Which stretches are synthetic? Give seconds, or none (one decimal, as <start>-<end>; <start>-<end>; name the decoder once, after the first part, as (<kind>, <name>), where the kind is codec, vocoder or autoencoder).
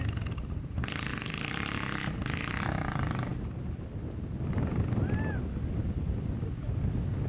none